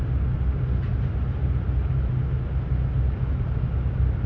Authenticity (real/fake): real